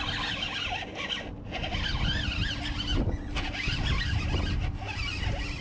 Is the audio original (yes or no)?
yes